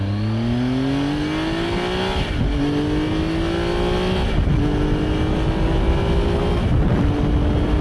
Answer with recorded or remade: recorded